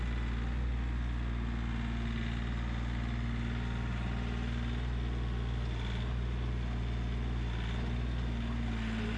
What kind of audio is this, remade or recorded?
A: recorded